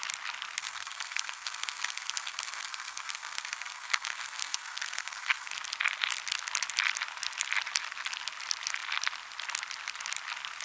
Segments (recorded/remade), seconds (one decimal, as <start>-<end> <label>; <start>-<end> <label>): 0.0-0.6 recorded; 0.6-5.5 remade; 5.5-10.6 recorded